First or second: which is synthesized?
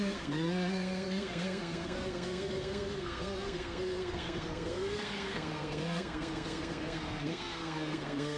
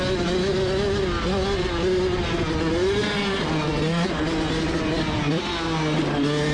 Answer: first